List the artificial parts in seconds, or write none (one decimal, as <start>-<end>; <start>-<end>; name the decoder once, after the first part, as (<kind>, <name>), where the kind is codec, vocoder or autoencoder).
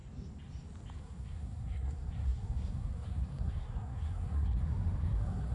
1.0-5.5 (codec, SNAC)